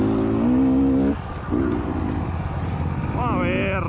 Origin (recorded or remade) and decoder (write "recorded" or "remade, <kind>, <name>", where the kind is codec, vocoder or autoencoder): recorded